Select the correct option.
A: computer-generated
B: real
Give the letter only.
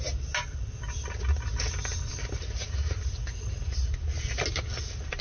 B